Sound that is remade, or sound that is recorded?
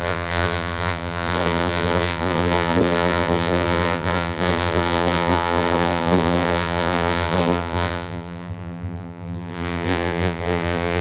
remade